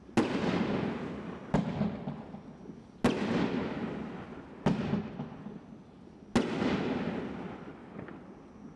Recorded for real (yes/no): yes